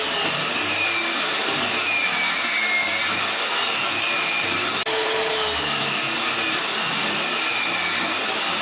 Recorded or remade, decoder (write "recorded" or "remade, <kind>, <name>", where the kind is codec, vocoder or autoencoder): recorded